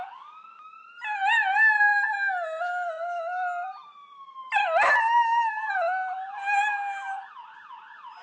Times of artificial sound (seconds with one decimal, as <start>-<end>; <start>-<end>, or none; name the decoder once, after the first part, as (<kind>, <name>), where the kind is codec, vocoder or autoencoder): none